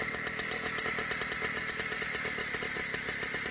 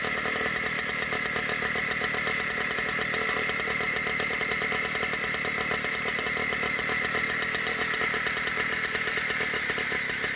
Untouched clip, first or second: first